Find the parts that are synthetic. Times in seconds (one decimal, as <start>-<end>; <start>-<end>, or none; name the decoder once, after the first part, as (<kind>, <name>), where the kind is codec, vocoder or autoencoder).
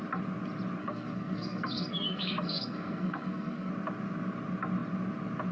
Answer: 0.8-3.7 (codec, SNAC)